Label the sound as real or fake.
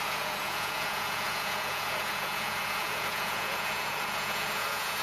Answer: fake